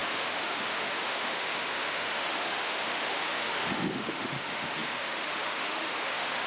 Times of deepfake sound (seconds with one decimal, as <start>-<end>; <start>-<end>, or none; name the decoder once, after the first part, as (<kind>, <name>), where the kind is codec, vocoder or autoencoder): 0.0-6.5 (autoencoder, DAC-VAE)